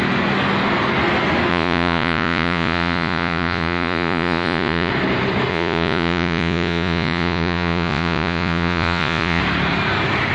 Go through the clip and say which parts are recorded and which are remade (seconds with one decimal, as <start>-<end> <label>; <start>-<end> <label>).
0.0-1.5 recorded; 1.5-4.9 remade; 4.9-5.5 recorded; 5.5-9.4 remade; 9.4-10.3 recorded